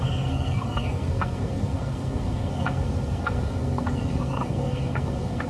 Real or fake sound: fake